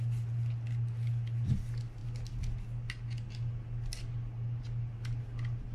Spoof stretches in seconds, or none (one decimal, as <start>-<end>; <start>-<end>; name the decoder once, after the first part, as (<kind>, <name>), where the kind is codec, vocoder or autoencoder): none